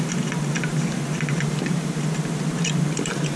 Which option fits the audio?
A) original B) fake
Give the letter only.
A